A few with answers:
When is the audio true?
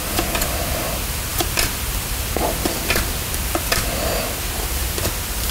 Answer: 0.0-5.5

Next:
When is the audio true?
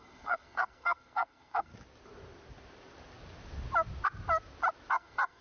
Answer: 1.7-4.9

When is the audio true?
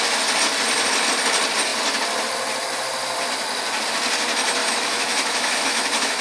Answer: 0.0-4.6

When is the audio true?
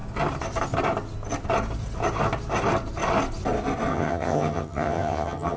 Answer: 0.0-3.9